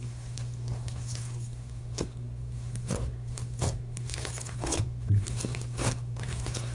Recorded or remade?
remade